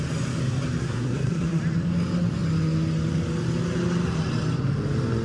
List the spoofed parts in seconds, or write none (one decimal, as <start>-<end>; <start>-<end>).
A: 0.8-1.6